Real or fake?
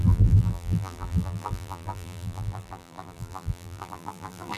fake